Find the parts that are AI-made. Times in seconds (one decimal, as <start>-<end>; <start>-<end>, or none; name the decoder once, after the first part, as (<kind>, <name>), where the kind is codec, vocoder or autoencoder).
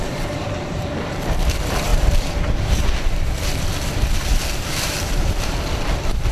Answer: 0.0-6.3 (vocoder, BigVGAN v2)